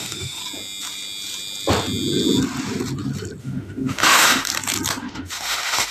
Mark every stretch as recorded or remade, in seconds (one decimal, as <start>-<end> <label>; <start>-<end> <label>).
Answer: 0.0-0.4 remade; 0.4-3.4 recorded; 3.4-4.5 remade; 4.5-5.0 recorded; 5.0-5.9 remade